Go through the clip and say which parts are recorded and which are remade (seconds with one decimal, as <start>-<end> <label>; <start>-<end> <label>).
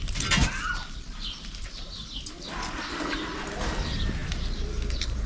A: 0.0-4.2 recorded; 4.2-5.3 remade